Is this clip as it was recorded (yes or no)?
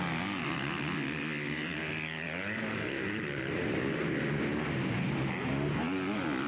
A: yes